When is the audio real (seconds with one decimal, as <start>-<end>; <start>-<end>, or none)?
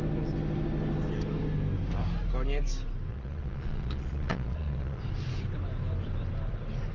0.0-3.1; 5.0-6.9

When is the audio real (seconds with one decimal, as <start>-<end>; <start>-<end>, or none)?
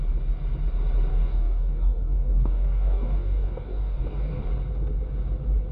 0.0-1.1; 4.5-5.7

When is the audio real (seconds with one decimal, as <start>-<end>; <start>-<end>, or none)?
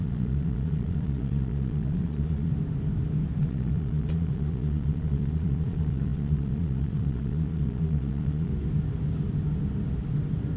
2.5-3.4; 8.5-10.6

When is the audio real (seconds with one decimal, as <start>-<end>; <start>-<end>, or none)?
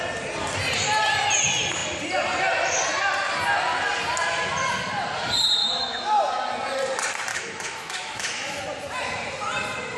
0.0-5.6; 6.2-7.3; 8.6-10.0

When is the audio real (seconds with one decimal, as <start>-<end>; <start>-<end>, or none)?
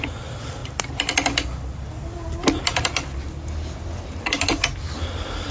0.0-5.5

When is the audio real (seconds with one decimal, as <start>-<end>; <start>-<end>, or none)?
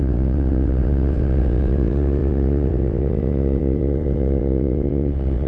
none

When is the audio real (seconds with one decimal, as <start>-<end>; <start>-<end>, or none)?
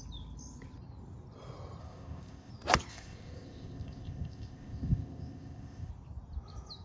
0.0-1.8; 2.5-2.9; 5.9-6.8